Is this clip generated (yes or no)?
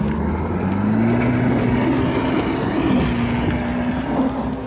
no